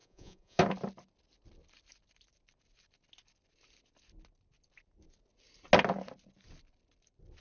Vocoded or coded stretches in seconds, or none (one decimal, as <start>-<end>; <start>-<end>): 0.0-0.6